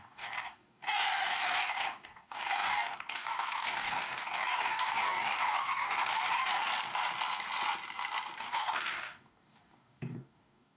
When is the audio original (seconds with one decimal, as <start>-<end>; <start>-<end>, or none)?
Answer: 6.7-8.4